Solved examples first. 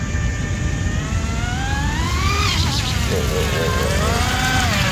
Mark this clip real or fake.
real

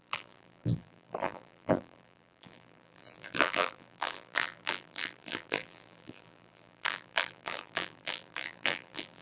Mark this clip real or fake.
fake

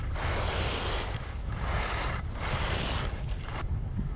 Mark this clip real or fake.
real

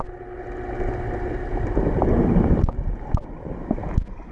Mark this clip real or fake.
real